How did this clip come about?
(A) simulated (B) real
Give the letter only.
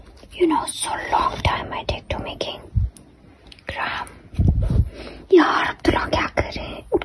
B